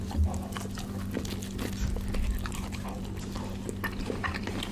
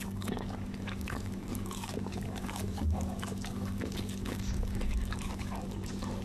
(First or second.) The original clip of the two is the first